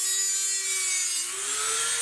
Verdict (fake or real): real